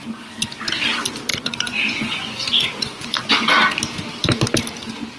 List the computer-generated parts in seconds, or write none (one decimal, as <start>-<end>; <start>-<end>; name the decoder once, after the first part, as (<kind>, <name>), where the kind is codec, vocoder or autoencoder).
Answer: 1.3-3.3 (vocoder, Vocos)